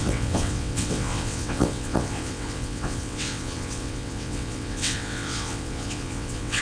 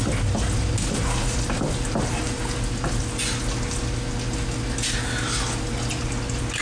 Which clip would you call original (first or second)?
second